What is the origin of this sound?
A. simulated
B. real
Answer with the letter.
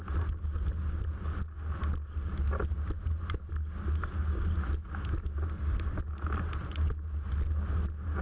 B